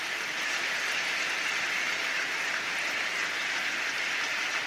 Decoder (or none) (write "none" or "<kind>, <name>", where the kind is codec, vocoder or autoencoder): none